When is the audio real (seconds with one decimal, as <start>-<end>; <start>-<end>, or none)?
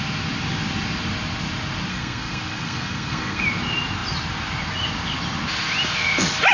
0.0-1.9; 3.4-6.5